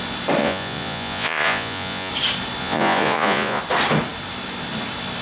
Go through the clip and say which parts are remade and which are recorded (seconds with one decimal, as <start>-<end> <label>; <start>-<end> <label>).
0.0-0.4 recorded; 0.4-2.1 remade; 2.1-2.6 recorded; 2.6-3.6 remade; 3.6-5.2 recorded